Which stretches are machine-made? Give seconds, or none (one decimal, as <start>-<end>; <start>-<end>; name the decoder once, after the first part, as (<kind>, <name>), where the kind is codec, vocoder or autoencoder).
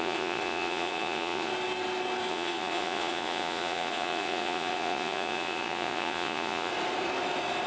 0.0-1.5 (vocoder, Vocos); 2.3-6.7